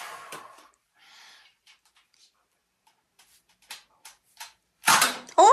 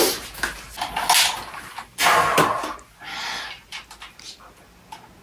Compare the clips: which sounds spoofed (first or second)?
first